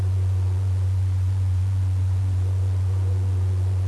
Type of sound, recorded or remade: remade